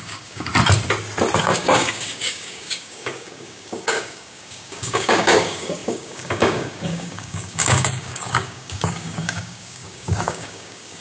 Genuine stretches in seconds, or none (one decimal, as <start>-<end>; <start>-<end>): 0.5-1.4